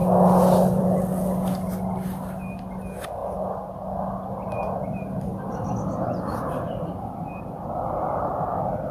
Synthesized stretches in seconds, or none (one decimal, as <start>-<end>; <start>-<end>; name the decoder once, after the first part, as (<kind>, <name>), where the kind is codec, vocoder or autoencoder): none